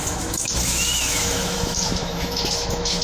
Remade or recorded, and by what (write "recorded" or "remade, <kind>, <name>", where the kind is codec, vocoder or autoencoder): remade, autoencoder, DAC-VAE